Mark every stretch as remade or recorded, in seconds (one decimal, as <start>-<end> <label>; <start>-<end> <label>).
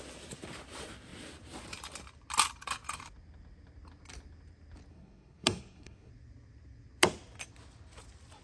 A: 0.0-4.9 recorded; 4.9-6.1 remade; 6.1-8.4 recorded